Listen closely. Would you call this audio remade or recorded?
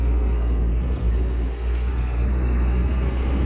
remade